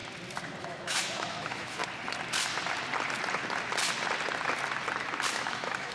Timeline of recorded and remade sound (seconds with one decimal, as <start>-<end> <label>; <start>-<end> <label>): 0.0-0.6 recorded; 0.6-1.8 remade; 1.8-5.3 recorded; 5.3-5.9 remade